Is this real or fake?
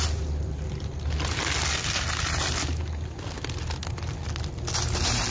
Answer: real